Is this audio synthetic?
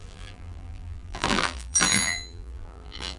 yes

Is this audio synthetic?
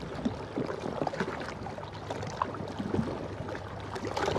no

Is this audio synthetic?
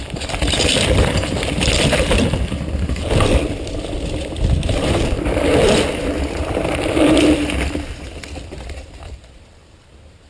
yes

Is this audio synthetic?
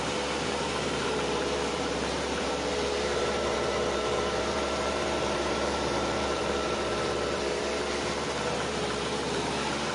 yes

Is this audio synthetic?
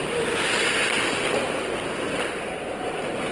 no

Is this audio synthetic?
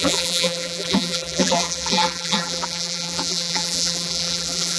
yes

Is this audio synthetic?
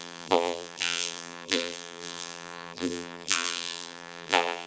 yes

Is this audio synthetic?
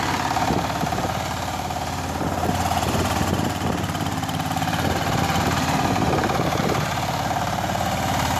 yes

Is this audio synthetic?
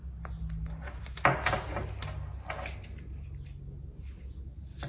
no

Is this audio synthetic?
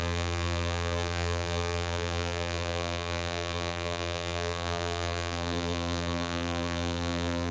yes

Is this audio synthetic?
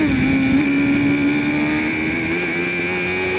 no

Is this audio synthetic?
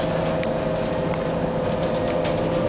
no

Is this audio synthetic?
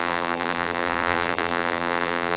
yes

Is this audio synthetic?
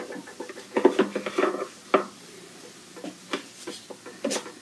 no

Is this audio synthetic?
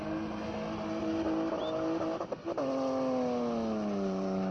no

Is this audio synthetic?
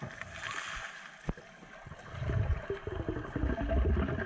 no